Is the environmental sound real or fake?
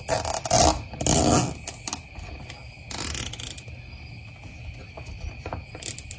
real